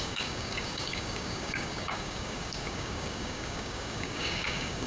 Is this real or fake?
fake